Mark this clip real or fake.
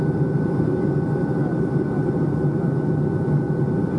real